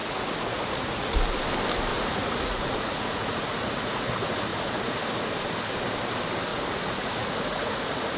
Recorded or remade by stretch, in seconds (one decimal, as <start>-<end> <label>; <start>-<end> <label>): 0.0-1.1 remade; 1.1-1.9 recorded; 1.9-4.1 remade; 4.1-4.5 recorded; 4.5-5.0 remade; 5.0-6.5 recorded; 6.5-8.2 remade